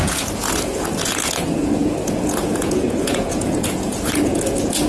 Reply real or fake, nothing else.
fake